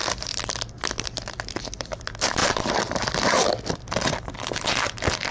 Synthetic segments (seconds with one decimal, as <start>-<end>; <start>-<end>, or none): none